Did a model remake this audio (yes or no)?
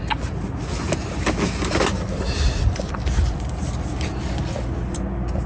no